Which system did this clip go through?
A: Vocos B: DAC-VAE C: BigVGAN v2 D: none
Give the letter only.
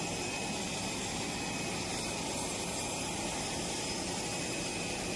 D